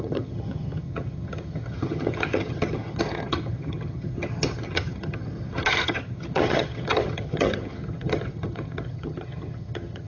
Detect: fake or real fake